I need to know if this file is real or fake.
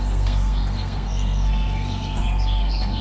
fake